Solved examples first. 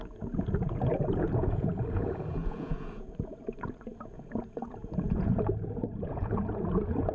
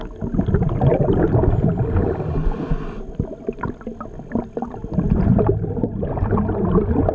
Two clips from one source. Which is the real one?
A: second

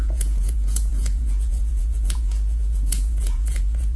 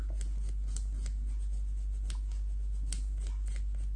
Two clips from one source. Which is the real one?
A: second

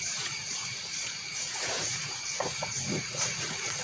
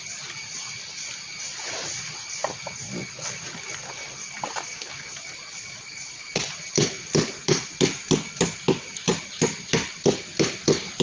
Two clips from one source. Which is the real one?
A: second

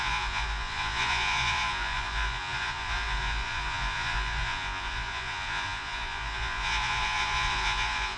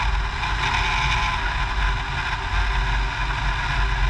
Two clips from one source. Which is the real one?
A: second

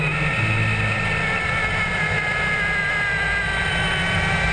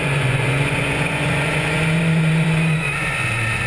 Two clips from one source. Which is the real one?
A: first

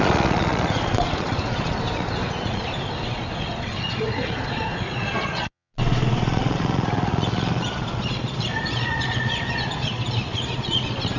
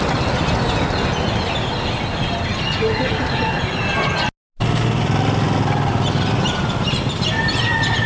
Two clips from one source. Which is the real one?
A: second